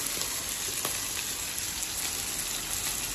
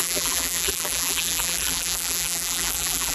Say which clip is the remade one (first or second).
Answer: second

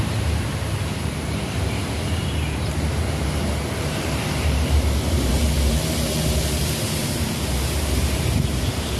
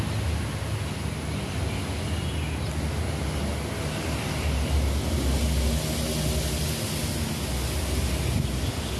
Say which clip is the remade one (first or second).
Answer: first